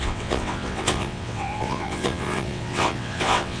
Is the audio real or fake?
fake